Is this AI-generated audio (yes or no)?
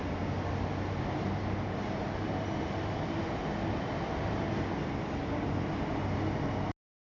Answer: no